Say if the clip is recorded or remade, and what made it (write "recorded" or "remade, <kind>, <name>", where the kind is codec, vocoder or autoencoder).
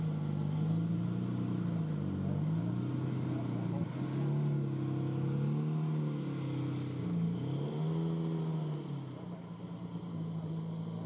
recorded